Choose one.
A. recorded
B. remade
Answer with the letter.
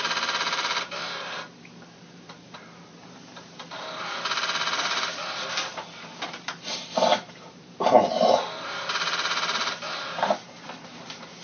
B